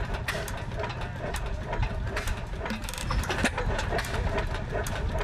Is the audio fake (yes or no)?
no